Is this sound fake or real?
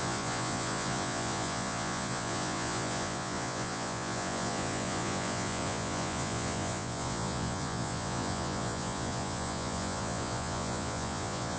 fake